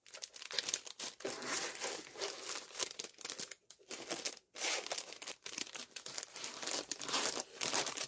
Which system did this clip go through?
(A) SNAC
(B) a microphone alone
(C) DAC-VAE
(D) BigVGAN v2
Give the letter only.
B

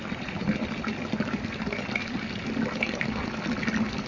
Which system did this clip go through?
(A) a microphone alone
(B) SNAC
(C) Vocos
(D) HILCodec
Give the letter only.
A